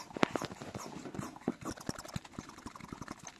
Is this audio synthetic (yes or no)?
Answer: no